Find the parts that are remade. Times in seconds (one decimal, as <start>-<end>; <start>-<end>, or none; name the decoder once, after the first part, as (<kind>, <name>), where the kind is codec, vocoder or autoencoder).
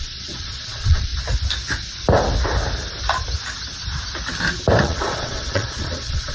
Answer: 0.0-1.1 (vocoder, Vocos); 4.8-6.3